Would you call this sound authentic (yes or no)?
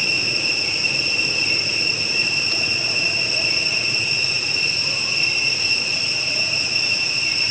no